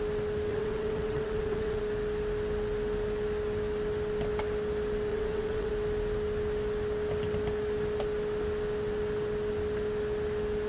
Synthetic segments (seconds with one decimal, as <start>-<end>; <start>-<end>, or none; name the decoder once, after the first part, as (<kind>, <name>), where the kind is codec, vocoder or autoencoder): 0.5-1.8 (vocoder, WaveNeXt); 5.1-5.7